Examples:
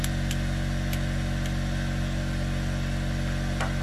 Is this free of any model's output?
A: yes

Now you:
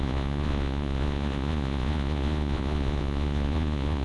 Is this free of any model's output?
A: no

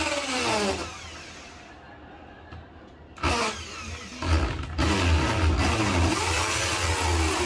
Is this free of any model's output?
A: yes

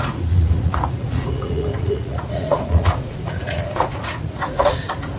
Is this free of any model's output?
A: no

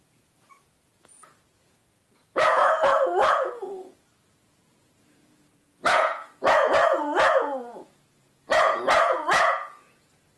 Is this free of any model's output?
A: no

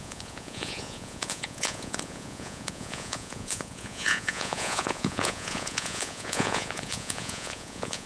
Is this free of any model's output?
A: no